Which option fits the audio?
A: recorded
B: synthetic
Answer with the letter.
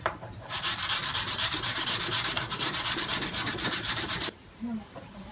B